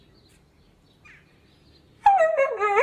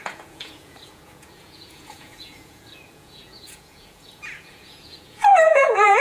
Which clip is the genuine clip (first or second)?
first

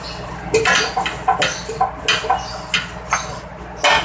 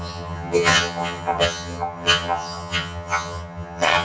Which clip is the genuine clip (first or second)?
first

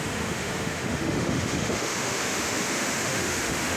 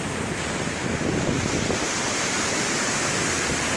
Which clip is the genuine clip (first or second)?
second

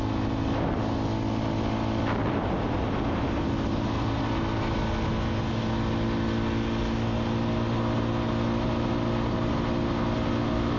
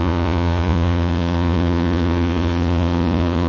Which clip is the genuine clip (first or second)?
first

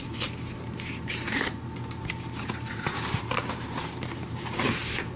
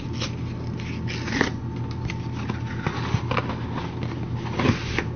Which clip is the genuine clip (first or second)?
second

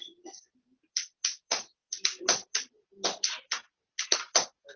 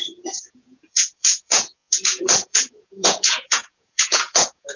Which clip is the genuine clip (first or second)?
first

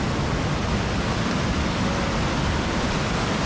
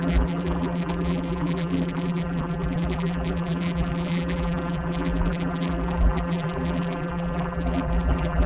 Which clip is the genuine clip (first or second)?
first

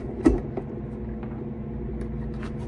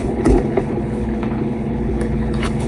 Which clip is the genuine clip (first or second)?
first